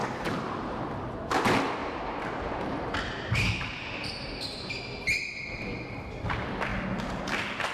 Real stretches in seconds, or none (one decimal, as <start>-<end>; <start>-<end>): 0.8-1.8; 4.8-7.7